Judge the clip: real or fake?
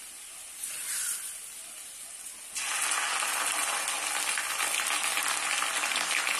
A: real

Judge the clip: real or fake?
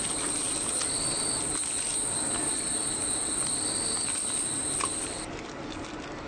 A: real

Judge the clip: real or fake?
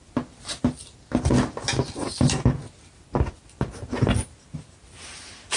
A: real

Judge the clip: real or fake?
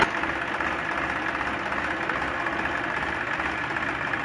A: real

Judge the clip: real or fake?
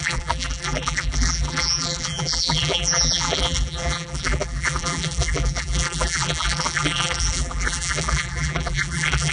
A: fake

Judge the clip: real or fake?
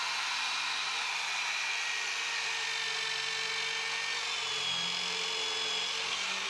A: real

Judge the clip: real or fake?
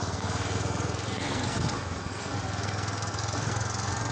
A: fake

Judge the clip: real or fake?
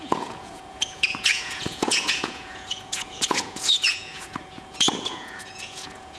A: fake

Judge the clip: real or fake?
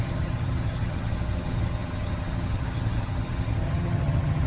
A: fake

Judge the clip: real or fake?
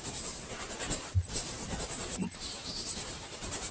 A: fake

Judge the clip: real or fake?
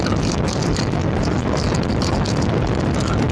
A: real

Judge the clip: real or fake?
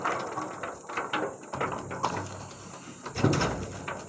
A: real